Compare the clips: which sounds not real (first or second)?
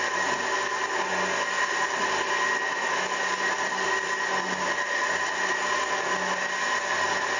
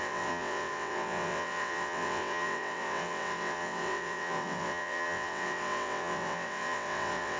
second